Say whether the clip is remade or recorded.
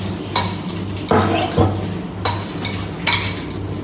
recorded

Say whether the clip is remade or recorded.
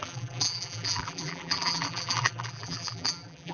remade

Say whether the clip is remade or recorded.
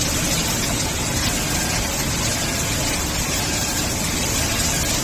recorded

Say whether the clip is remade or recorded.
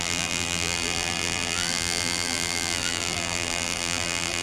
remade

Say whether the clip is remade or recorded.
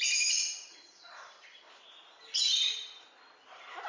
recorded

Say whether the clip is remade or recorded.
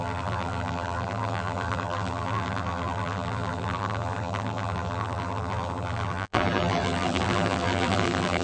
remade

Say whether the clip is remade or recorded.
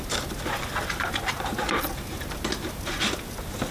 recorded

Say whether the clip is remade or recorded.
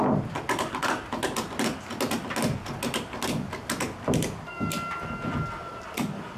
recorded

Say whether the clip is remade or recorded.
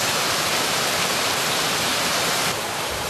remade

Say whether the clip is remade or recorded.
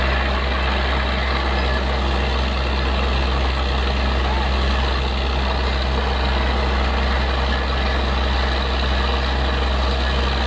recorded